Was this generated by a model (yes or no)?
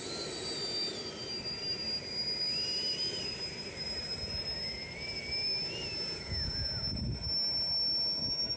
no